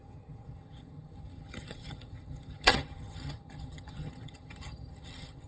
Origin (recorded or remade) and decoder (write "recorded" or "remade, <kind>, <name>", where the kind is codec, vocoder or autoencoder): remade, vocoder, HiFi-GAN